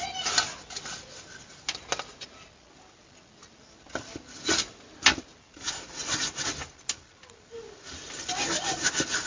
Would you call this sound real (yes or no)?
yes